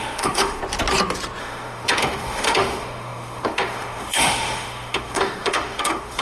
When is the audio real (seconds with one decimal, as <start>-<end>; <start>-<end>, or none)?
0.6-1.4